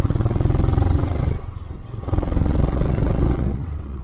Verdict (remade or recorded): remade